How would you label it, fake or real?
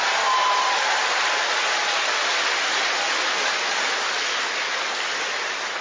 real